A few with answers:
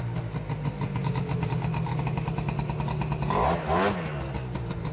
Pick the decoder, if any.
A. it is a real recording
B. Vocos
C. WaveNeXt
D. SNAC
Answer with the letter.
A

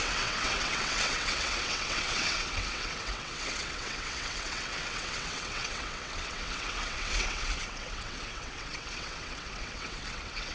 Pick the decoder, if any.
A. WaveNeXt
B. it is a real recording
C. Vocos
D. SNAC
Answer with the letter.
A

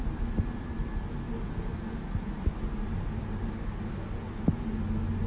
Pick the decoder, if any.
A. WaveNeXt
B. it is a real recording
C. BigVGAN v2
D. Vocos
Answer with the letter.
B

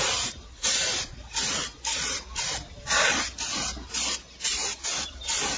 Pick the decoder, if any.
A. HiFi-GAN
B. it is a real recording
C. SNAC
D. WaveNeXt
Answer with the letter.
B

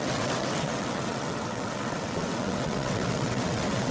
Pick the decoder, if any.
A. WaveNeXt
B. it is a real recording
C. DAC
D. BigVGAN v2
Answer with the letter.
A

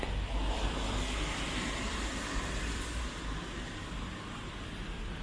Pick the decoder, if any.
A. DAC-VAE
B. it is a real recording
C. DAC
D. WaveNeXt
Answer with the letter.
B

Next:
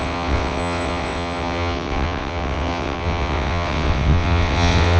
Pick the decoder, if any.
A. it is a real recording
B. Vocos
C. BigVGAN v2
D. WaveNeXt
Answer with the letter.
D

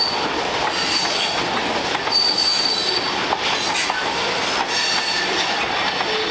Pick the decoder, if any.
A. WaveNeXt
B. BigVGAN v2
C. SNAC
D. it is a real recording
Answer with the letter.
D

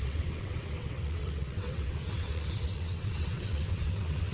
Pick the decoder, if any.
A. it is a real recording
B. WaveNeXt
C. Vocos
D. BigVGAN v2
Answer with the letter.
B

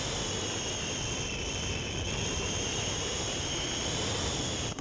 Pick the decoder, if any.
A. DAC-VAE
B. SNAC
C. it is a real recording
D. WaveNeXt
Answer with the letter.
C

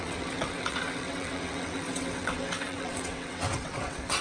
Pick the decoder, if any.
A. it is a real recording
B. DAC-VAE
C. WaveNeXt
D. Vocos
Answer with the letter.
C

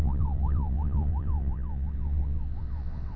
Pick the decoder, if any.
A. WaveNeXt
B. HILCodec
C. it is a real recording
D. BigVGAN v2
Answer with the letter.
A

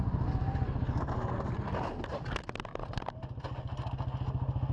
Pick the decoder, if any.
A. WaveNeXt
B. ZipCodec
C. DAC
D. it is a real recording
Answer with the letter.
D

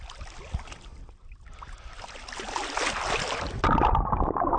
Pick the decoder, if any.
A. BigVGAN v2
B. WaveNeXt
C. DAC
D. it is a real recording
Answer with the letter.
D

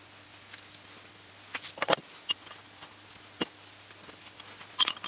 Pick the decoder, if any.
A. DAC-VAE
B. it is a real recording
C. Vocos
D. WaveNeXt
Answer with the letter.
B